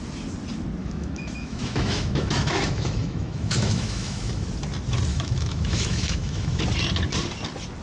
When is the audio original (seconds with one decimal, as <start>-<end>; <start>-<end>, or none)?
0.0-0.8; 4.5-5.1; 6.6-7.8